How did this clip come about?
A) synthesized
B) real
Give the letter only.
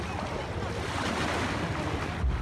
B